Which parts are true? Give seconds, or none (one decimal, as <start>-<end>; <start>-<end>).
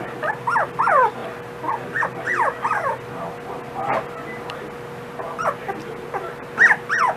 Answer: 0.0-1.2; 3.3-7.2